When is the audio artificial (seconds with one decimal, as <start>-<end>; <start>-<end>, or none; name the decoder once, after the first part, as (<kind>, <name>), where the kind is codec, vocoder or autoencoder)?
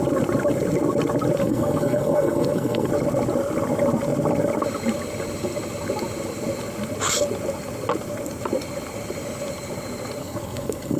1.4-2.9 (codec, SNAC); 10.2-11.0